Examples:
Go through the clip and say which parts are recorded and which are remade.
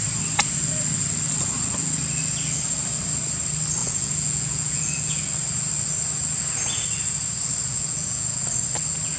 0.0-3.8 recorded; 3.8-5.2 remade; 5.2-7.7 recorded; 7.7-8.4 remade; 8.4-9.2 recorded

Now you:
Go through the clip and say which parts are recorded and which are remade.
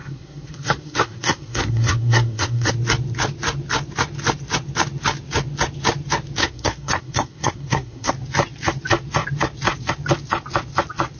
0.0-2.7 remade; 2.7-6.4 recorded; 6.4-8.1 remade; 8.1-11.2 recorded